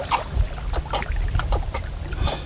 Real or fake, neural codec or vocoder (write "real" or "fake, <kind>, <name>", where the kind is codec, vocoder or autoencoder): real